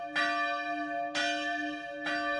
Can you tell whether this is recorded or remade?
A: recorded